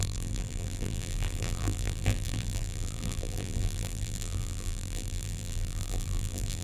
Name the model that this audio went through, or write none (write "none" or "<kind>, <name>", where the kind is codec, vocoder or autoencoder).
vocoder, BigVGAN v2